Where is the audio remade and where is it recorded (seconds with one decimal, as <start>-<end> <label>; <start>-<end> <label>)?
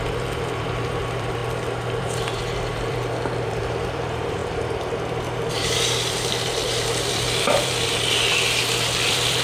0.0-1.4 remade; 1.4-2.0 recorded; 2.0-4.4 remade; 4.4-5.5 recorded; 5.5-9.4 remade